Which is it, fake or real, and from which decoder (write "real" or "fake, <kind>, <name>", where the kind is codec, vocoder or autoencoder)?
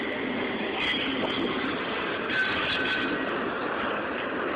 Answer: real